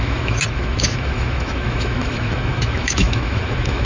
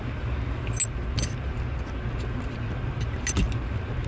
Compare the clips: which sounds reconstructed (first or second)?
first